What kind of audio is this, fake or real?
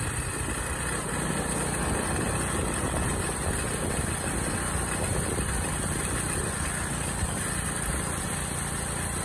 real